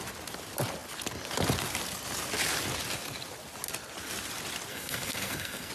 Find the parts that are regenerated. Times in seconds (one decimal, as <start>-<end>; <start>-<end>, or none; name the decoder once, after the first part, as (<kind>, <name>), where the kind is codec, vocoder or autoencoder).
4.7-5.7 (codec, SNAC)